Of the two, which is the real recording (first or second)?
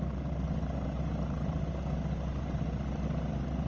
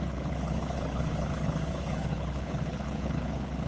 first